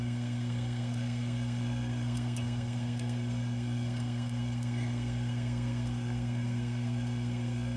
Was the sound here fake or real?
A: fake